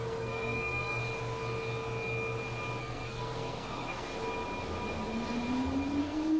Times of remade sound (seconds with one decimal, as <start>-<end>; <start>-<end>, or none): 0.0-1.0; 2.8-4.1; 6.0-6.4